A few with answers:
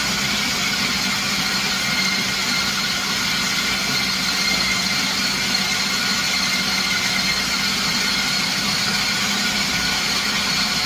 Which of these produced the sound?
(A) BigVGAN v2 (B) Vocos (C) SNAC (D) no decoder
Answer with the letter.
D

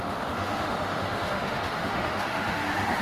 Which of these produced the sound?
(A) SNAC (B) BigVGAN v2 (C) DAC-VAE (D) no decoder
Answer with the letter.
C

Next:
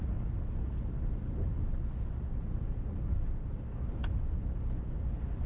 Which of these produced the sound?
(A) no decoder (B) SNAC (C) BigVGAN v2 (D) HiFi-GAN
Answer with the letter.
A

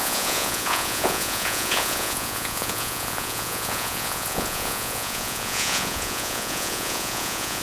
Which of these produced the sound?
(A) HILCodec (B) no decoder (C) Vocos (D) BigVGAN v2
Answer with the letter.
C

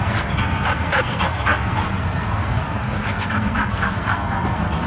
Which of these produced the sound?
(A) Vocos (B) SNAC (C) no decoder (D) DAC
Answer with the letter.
B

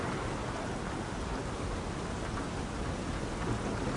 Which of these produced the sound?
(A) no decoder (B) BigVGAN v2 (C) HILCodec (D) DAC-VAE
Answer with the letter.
A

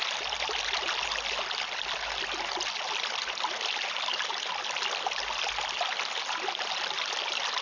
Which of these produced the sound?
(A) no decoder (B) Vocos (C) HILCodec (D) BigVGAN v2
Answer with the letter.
A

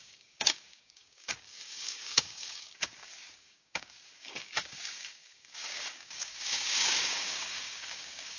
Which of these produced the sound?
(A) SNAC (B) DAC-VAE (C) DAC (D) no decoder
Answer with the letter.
C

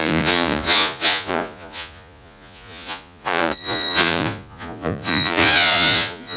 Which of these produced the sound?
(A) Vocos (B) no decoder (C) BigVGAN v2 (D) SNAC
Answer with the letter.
A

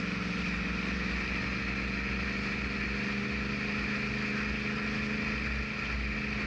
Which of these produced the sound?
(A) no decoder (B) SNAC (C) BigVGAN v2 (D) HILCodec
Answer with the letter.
A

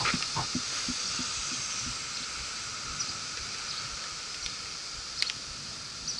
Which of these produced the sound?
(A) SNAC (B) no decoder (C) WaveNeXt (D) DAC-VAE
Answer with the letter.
B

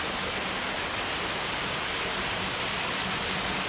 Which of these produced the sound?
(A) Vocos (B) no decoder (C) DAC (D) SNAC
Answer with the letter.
B